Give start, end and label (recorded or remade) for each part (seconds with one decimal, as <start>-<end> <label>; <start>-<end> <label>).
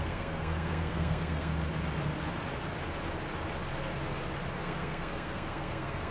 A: 0.0-1.5 remade; 1.5-4.6 recorded; 4.6-6.1 remade